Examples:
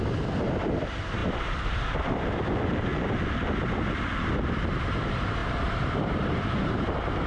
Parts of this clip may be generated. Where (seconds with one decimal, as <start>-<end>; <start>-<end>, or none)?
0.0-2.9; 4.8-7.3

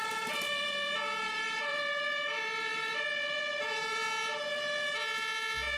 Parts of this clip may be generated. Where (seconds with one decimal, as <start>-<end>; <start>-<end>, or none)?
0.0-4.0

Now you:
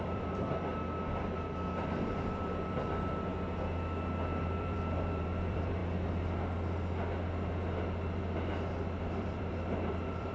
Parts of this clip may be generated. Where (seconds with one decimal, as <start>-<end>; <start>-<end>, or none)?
0.0-0.7; 1.8-3.3; 4.4-5.8; 9.0-10.3

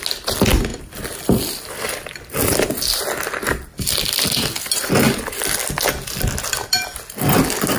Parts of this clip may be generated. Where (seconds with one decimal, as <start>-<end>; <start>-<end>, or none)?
none